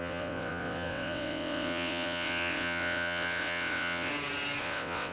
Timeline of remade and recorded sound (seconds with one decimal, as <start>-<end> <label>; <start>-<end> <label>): 0.0-4.1 remade; 4.1-4.6 recorded; 4.6-5.1 remade